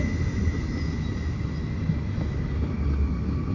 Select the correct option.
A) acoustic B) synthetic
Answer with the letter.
A